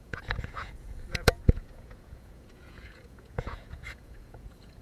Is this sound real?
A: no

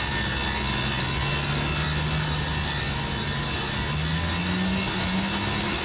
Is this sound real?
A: yes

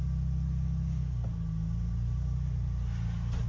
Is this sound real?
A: yes